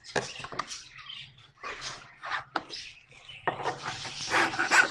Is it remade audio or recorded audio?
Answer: recorded